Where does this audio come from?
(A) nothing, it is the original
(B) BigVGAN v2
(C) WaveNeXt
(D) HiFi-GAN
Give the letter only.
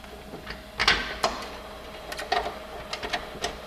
A